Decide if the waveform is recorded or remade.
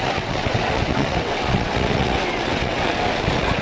remade